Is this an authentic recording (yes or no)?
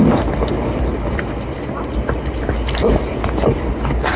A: yes